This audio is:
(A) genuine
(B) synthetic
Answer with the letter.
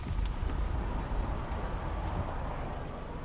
A